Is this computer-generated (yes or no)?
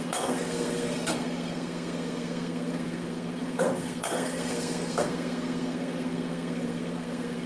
yes